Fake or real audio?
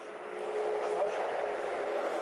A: real